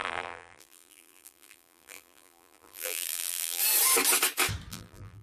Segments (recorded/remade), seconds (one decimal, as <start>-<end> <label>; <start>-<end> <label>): 0.0-3.6 remade; 3.6-4.7 recorded; 4.7-5.2 remade